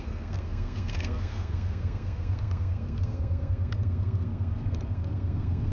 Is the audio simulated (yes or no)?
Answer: yes